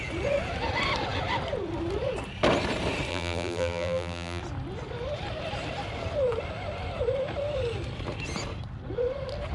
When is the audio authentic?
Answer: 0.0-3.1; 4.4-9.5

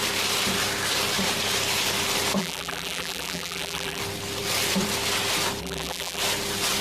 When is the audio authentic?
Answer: 0.0-2.4; 4.0-5.6; 6.2-6.8

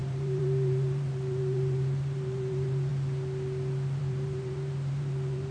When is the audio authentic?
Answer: 2.9-4.0